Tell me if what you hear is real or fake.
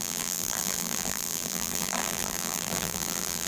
fake